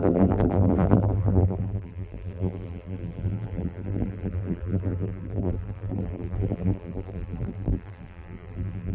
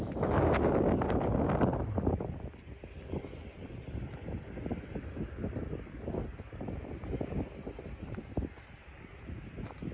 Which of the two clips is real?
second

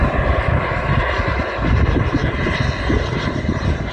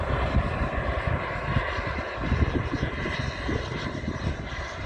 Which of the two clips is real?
first